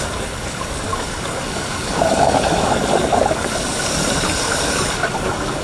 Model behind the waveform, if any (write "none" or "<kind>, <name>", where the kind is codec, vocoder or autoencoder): codec, DAC